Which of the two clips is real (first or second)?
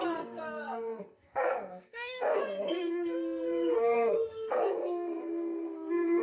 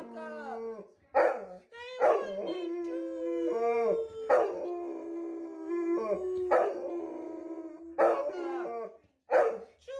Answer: second